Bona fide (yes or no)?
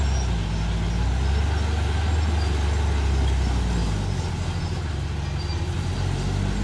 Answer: yes